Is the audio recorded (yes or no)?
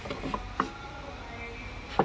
yes